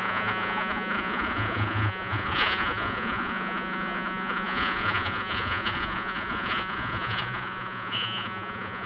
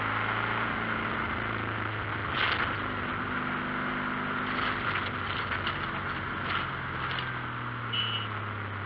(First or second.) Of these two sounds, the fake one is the first